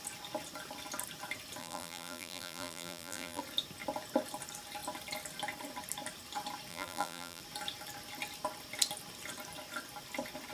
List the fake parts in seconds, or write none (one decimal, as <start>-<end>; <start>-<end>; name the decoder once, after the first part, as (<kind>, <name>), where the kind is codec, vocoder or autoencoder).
1.6-3.4 (vocoder, BigVGAN v2); 6.7-7.4